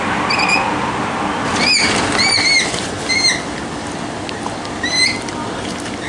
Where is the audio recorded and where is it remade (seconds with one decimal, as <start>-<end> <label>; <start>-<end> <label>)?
0.0-6.1 recorded